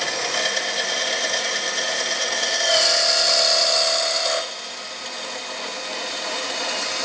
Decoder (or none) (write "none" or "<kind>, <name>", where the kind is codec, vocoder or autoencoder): none